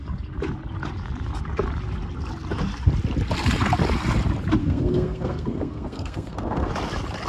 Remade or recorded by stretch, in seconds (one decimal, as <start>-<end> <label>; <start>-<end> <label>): 0.0-4.6 recorded; 4.6-6.7 remade; 6.7-7.3 recorded